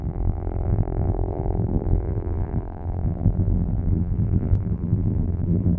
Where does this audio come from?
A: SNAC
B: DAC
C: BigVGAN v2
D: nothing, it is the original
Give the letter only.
C